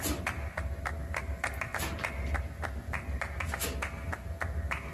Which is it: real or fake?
real